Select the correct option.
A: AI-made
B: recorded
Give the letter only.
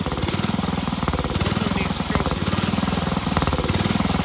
B